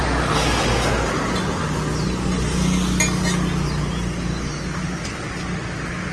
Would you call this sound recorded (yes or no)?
yes